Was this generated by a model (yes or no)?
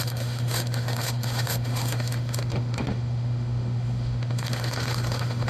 yes